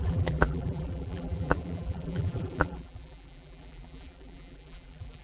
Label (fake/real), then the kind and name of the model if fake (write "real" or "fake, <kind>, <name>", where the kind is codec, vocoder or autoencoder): fake, vocoder, BigVGAN v2